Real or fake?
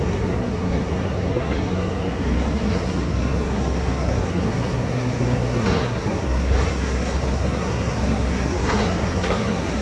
fake